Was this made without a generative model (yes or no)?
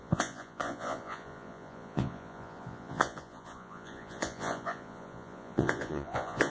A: no